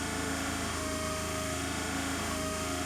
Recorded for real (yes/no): no